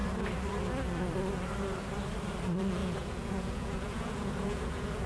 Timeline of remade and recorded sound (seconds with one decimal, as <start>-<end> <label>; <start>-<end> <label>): 0.0-2.8 recorded; 2.8-5.1 remade